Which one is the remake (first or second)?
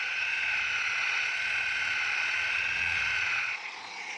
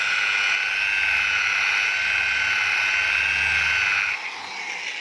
first